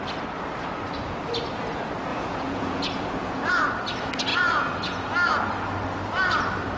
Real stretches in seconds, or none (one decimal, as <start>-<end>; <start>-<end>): 0.0-2.1; 3.5-4.3; 5.1-6.8